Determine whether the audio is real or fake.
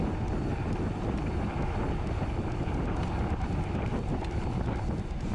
real